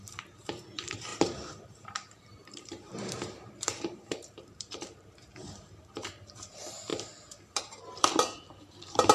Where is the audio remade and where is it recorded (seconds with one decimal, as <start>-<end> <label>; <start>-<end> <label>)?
0.0-9.1 remade